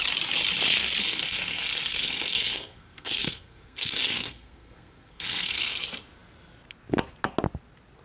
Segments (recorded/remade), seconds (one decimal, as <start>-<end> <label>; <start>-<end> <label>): 0.0-1.0 recorded; 1.0-5.8 remade; 5.8-8.0 recorded